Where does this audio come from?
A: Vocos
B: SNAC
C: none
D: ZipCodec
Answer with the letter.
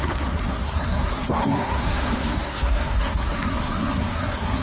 B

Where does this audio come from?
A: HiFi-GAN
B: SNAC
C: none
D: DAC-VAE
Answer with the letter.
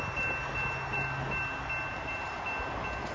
C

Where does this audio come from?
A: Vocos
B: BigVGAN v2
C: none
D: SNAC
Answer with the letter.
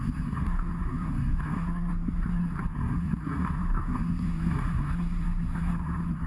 D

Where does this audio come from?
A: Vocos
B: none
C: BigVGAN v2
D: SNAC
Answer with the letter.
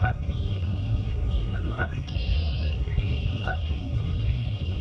D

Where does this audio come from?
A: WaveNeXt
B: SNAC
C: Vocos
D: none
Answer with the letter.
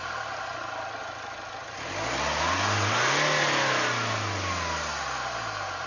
D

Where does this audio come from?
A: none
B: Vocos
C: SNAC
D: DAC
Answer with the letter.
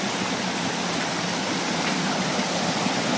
A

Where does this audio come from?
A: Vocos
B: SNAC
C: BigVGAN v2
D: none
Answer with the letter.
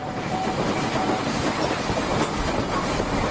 D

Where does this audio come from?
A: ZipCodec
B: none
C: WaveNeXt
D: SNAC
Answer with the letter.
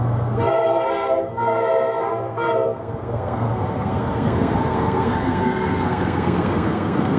D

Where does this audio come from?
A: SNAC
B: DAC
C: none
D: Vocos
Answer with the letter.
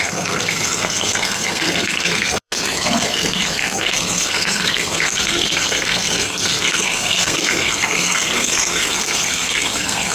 A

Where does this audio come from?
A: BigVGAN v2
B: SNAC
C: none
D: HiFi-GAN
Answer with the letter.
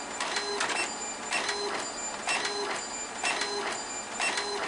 C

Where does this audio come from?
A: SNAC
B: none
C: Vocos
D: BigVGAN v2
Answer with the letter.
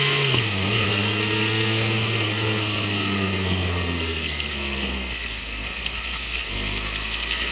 A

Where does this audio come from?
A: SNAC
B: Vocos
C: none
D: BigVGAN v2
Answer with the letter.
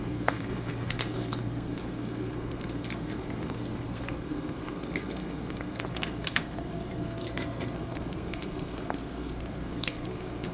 A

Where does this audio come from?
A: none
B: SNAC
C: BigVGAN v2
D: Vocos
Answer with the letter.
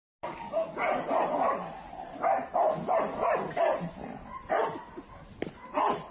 A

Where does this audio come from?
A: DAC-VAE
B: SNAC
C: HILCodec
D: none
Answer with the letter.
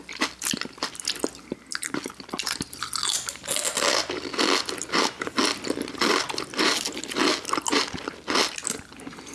D